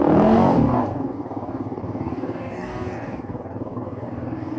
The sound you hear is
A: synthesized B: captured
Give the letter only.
A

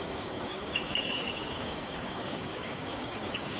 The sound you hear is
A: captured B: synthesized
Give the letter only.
B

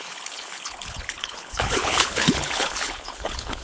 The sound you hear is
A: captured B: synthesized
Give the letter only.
B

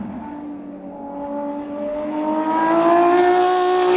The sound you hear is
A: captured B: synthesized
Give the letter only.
A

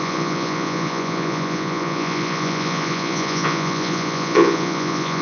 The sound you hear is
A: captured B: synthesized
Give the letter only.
B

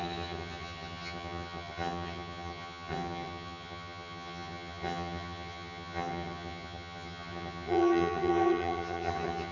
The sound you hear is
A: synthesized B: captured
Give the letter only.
A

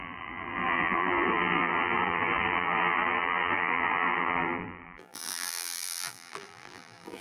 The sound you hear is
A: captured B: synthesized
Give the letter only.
B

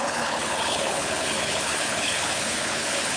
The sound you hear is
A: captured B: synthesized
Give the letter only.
B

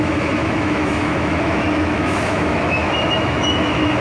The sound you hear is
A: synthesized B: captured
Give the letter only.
A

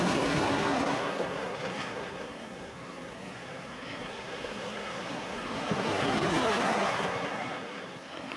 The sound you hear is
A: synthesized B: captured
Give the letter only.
A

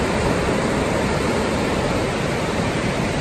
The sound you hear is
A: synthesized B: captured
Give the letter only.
B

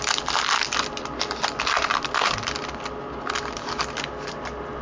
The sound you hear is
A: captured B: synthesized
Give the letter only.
A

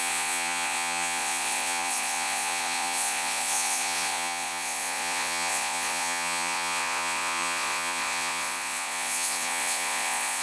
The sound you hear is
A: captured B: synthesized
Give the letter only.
B